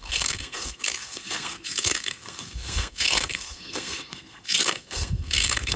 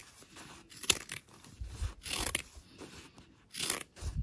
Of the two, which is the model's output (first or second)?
first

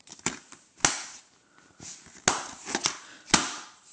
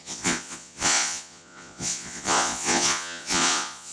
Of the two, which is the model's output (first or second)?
second